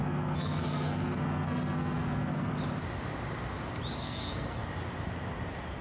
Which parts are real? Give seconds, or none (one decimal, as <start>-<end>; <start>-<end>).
2.5-4.0; 4.6-5.8